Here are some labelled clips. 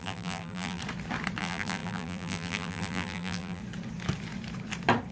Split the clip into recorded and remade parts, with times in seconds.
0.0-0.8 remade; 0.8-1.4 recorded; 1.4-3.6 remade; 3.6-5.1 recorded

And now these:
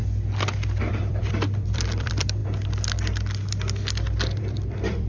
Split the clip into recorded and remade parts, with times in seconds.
0.0-0.8 recorded; 0.8-2.4 remade; 2.4-4.4 recorded; 4.4-5.1 remade

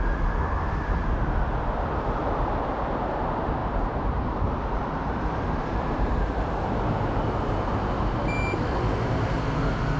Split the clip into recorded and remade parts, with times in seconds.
0.0-3.6 recorded; 3.6-7.1 remade; 7.1-10.0 recorded

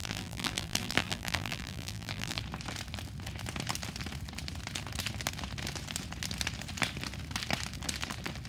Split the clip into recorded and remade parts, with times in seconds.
0.0-2.4 remade; 2.4-8.5 recorded

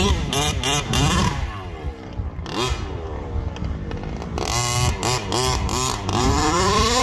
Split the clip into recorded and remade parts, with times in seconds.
0.0-6.1 recorded; 6.1-7.0 remade

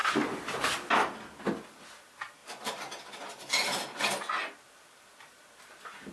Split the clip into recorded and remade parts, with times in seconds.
0.0-6.1 recorded

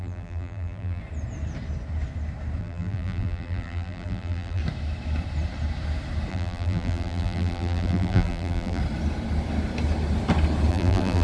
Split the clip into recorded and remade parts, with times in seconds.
0.0-1.0 remade; 1.0-2.6 recorded; 2.6-4.6 remade; 4.6-6.3 recorded; 6.3-8.8 remade; 8.8-10.7 recorded; 10.7-11.2 remade

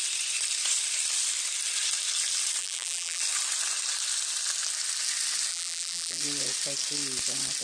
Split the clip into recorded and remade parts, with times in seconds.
0.0-2.6 recorded; 2.6-3.2 remade; 3.2-5.5 recorded; 5.5-6.2 remade; 6.2-7.6 recorded